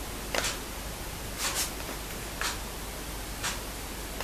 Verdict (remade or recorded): recorded